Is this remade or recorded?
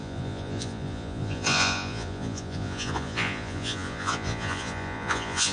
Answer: remade